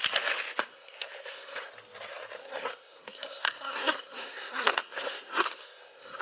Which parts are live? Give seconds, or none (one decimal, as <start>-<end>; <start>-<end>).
0.0-0.7; 1.7-2.4